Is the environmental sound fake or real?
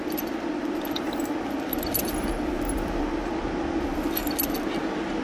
real